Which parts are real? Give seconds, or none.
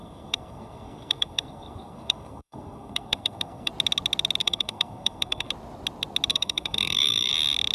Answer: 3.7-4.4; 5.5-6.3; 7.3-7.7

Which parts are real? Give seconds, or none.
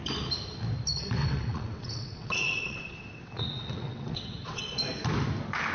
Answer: 0.0-1.2; 4.6-5.7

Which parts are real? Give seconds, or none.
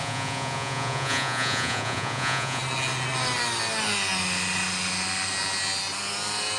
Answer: 2.6-6.6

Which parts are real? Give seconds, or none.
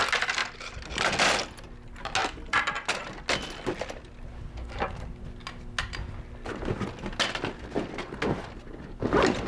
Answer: 0.0-9.5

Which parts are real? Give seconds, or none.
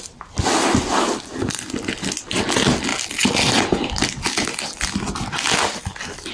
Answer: 0.0-6.3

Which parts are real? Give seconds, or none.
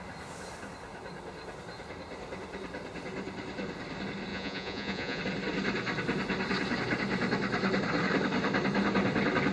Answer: 0.0-4.3; 5.2-9.5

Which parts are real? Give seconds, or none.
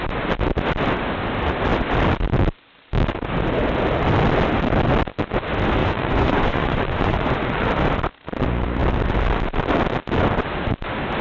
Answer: 0.0-5.8; 7.7-11.2